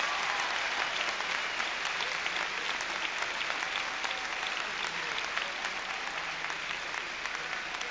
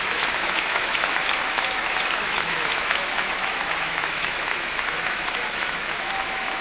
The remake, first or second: second